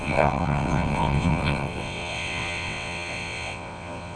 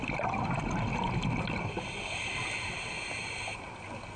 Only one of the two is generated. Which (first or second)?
first